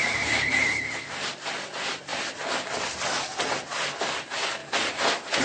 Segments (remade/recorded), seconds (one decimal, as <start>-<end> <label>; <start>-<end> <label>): 0.0-2.1 remade; 2.1-2.7 recorded; 2.7-4.6 remade; 4.6-5.4 recorded